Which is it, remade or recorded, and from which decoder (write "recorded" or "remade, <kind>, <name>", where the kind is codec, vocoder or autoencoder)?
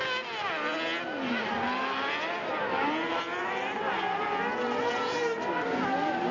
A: recorded